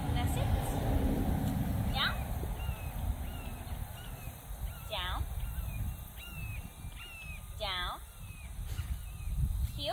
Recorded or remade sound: recorded